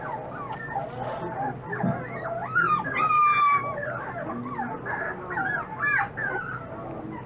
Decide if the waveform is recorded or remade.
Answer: recorded